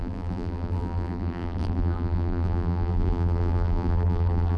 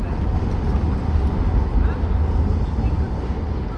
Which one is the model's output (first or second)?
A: first